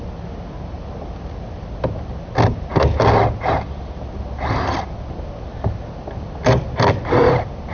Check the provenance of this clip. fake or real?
real